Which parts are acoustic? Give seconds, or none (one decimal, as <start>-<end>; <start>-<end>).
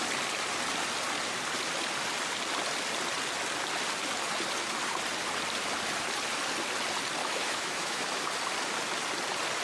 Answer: 0.0-7.2; 8.2-9.6